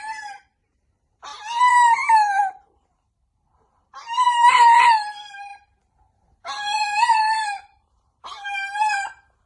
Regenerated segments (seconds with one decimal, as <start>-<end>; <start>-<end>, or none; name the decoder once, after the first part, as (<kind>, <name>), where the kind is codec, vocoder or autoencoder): 0.0-1.3 (vocoder, BigVGAN v2); 2.6-9.5